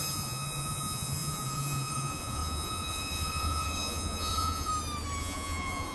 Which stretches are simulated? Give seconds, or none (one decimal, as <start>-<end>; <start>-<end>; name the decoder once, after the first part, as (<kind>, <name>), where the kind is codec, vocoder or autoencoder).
0.0-4.7 (vocoder, Vocos); 5.2-5.9

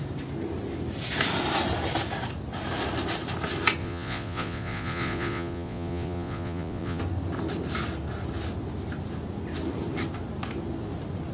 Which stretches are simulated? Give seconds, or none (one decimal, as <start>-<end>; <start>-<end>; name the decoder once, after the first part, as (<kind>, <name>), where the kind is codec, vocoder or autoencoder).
3.8-7.0 (vocoder, Vocos)

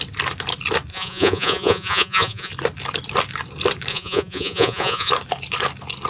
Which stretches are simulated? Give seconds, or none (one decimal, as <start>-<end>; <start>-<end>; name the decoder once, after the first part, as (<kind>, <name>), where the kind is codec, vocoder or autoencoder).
0.9-2.5 (vocoder, Vocos); 3.9-5.1

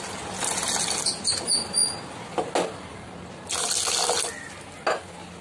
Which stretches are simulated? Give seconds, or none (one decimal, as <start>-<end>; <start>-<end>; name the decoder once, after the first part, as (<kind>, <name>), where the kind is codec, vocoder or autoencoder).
none